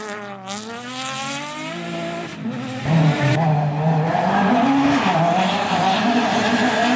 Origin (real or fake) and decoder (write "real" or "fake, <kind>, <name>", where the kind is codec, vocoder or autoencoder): real